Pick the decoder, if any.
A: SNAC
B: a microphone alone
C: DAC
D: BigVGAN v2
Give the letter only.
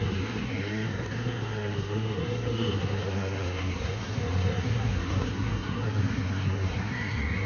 A